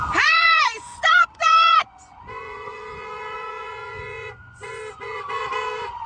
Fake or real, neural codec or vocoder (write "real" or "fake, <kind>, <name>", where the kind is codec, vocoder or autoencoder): fake, vocoder, Vocos